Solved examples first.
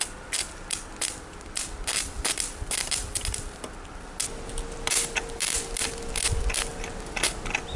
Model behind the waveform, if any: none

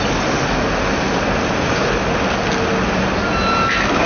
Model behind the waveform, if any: none